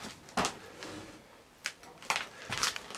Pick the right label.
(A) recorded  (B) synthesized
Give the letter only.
A